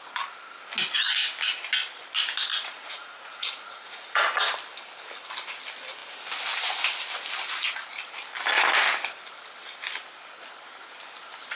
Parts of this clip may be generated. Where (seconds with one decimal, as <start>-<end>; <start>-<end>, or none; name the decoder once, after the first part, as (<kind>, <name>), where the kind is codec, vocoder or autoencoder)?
2.5-4.2 (vocoder, Vocos)